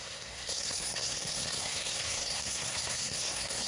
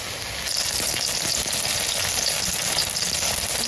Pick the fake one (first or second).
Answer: first